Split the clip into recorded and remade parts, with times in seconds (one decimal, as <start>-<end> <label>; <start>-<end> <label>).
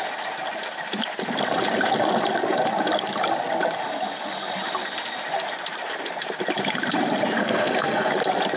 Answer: 0.0-7.4 recorded; 7.4-8.1 remade; 8.1-8.6 recorded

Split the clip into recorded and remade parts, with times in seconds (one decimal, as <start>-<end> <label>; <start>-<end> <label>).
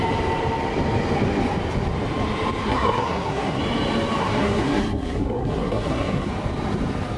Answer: 0.0-2.6 recorded; 2.6-3.6 remade; 3.6-4.2 recorded; 4.2-6.3 remade; 6.3-7.2 recorded